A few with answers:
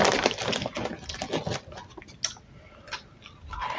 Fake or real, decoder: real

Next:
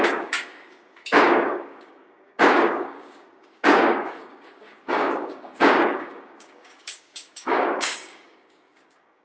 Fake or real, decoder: fake, codec, DAC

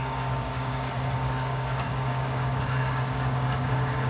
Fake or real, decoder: fake, codec, DAC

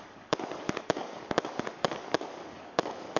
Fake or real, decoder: fake, codec, DAC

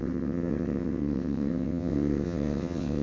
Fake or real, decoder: fake, vocoder, WaveNeXt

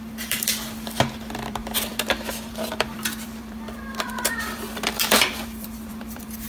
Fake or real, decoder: fake, vocoder, BigVGAN v2